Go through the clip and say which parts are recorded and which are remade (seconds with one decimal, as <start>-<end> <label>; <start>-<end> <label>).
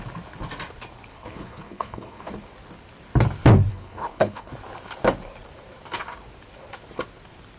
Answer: 0.0-1.1 recorded; 1.1-2.3 remade; 2.3-3.7 recorded; 3.7-4.5 remade; 4.5-7.6 recorded